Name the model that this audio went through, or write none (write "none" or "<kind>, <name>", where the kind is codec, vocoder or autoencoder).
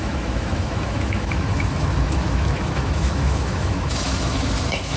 autoencoder, DAC-VAE